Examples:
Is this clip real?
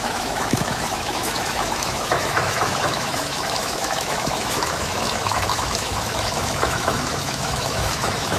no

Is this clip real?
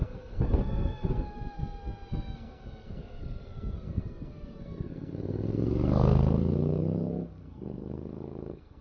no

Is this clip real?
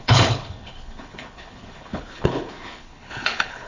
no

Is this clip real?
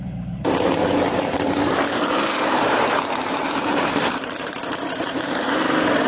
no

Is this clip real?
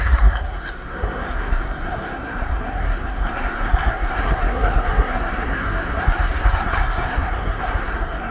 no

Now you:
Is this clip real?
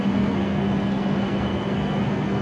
no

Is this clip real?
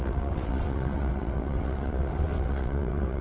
no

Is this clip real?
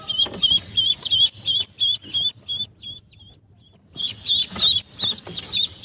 yes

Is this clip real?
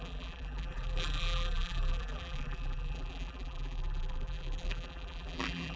no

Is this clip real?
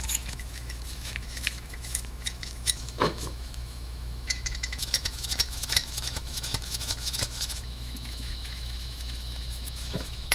no